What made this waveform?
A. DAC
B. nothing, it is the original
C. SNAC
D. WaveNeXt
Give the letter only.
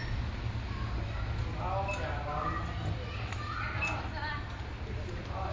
B